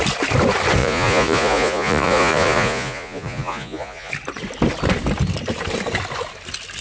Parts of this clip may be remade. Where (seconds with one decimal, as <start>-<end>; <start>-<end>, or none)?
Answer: 0.8-4.1